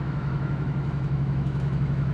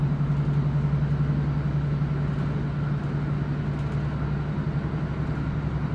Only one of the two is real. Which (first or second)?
second